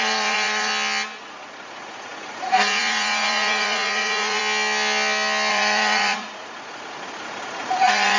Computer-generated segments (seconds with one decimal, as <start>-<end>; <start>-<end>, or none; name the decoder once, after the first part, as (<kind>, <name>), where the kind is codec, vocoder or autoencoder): 0.0-0.7 (vocoder, Vocos); 1.2-4.4; 5.5-8.2